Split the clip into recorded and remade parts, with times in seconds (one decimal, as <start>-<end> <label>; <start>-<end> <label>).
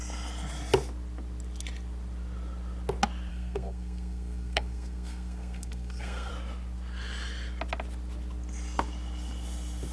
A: 0.0-3.3 recorded; 3.3-6.3 remade; 6.3-9.9 recorded